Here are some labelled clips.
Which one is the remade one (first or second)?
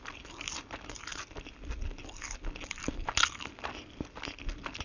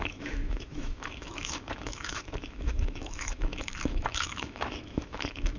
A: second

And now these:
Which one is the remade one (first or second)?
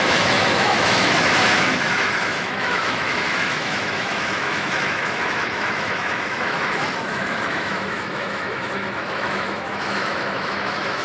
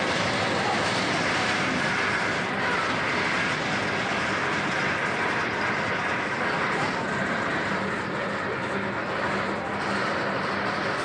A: first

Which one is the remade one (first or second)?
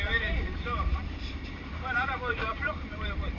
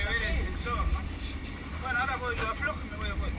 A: first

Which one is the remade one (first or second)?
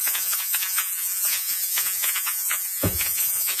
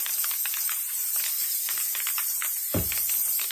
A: first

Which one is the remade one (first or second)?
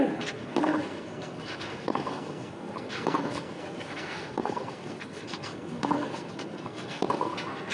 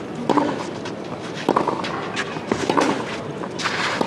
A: first